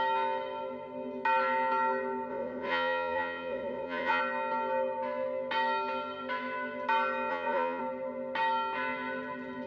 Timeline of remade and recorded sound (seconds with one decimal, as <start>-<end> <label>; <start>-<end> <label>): 0.0-2.3 recorded; 2.3-4.2 remade; 4.2-7.3 recorded; 7.3-7.8 remade; 7.8-9.7 recorded